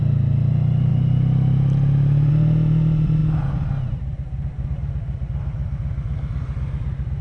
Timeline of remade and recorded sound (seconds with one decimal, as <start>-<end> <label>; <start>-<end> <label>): 0.0-7.2 recorded